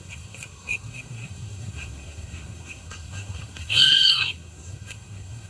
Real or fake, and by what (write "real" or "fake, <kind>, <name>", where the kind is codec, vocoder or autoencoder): fake, codec, SNAC